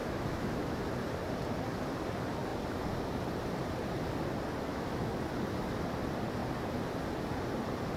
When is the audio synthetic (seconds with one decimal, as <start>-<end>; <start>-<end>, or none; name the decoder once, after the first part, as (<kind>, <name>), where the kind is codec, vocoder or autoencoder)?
0.0-0.8 (autoencoder, DAC-VAE); 4.7-5.3